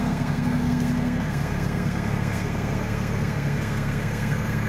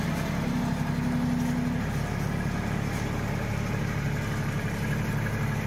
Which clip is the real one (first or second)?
second